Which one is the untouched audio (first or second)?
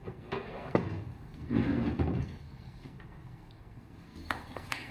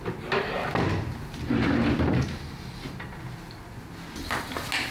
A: second